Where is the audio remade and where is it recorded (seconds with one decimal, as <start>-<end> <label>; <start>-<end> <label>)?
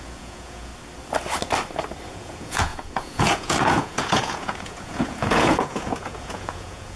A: 0.0-0.7 remade; 0.7-2.1 recorded; 2.1-7.0 remade